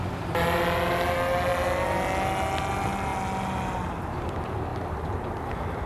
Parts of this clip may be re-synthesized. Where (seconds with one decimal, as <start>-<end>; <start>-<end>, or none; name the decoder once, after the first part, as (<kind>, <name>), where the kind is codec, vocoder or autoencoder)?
none